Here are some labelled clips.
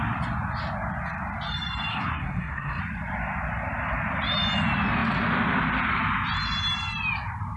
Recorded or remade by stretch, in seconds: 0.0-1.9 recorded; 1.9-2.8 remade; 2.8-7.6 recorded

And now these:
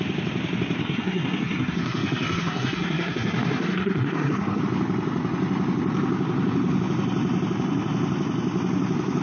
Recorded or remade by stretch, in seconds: 0.0-0.8 recorded; 0.8-4.6 remade; 4.6-9.2 recorded

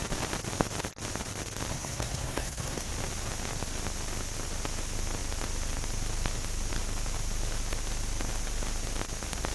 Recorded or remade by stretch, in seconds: 0.0-1.7 recorded; 1.7-2.9 remade; 2.9-9.5 recorded